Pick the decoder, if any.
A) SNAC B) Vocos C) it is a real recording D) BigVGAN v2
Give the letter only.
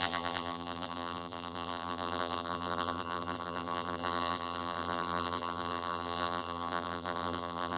D